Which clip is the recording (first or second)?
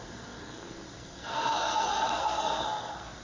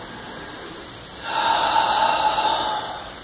second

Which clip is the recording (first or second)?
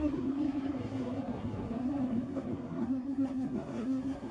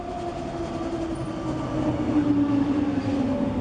second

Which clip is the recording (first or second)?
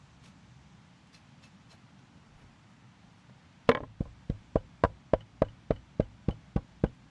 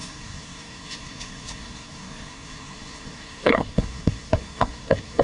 first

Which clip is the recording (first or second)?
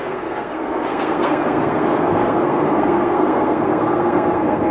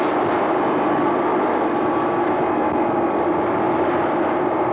second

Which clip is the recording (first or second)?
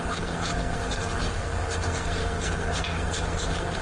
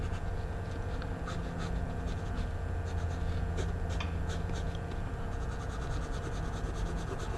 second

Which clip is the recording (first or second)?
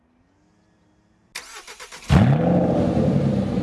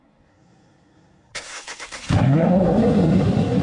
first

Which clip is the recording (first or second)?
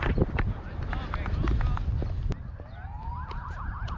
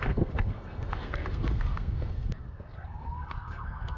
first